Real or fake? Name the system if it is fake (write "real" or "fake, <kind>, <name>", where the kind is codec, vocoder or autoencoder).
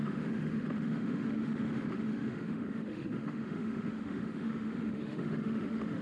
fake, autoencoder, DAC-VAE